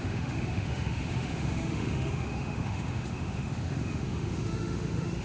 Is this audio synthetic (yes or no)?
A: yes